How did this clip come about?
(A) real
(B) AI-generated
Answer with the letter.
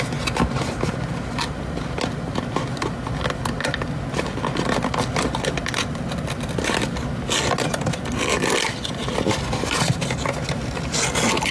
A